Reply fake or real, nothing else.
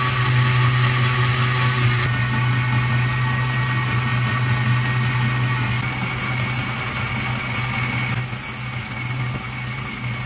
real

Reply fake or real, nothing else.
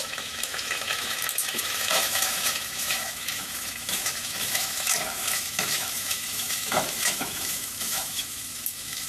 fake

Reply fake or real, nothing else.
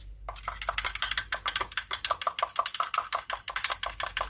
real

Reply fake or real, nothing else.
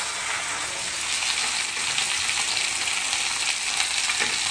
real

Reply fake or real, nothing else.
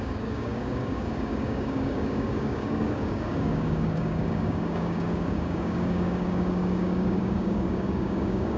fake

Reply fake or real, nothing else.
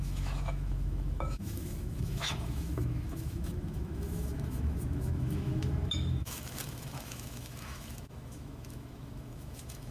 fake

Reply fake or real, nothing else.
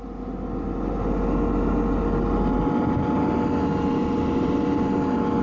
real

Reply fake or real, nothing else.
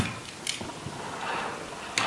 real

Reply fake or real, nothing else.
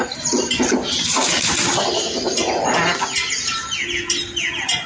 real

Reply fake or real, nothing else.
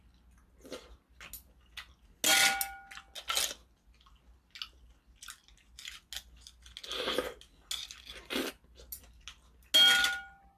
real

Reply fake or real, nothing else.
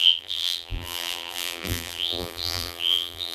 fake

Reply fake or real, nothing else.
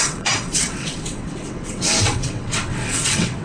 fake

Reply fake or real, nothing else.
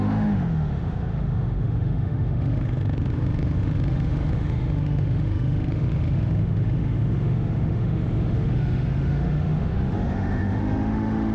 fake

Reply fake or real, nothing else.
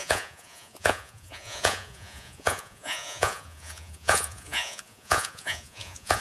fake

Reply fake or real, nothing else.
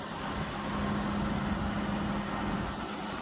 real